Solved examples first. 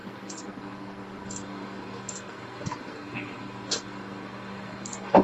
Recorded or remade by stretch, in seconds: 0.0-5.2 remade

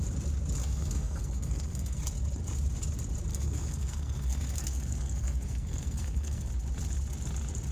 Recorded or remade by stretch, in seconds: 0.0-0.6 recorded; 0.6-2.0 remade; 2.0-3.3 recorded; 3.3-6.5 remade; 6.5-7.7 recorded

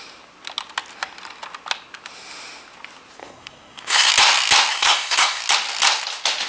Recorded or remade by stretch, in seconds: 0.0-3.2 recorded; 3.2-4.1 remade; 4.1-4.7 recorded; 4.7-5.4 remade; 5.4-6.5 recorded

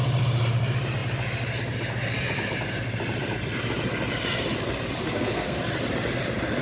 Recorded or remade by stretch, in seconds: 0.0-5.0 recorded; 5.0-5.6 remade; 5.6-6.6 recorded

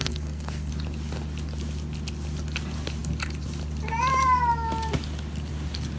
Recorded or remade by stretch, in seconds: 0.0-0.7 remade; 0.7-6.0 recorded

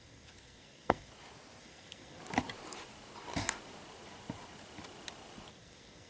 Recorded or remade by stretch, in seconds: 0.0-1.1 remade; 1.1-1.6 recorded; 1.6-2.2 remade; 2.2-5.5 recorded; 5.5-6.1 remade